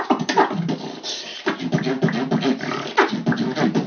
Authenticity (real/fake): real